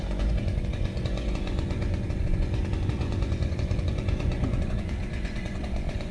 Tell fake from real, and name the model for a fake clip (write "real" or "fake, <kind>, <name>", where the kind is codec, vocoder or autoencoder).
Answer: fake, vocoder, Vocos